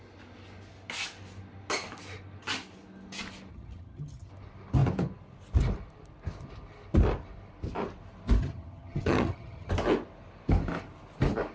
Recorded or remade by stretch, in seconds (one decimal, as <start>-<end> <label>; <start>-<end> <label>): 0.0-3.5 recorded; 3.5-4.3 remade; 4.3-8.4 recorded; 8.4-9.7 remade; 9.7-11.5 recorded